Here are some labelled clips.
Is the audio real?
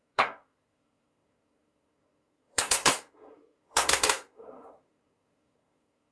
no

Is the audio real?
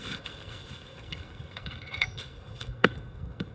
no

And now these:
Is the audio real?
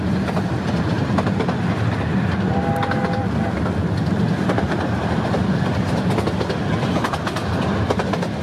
yes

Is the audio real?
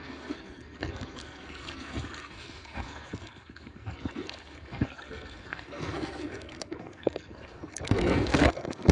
no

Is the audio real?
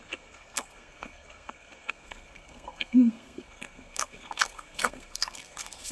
no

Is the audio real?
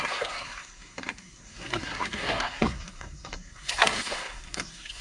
no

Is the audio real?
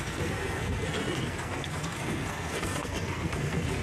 no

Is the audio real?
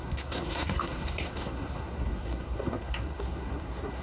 no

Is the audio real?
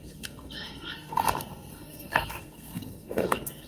no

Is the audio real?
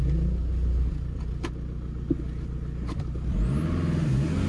yes